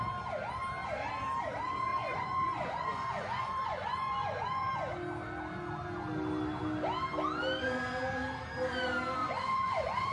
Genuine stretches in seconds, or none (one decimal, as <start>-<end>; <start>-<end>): 0.0-1.9; 4.7-9.2